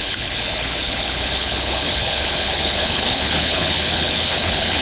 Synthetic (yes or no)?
yes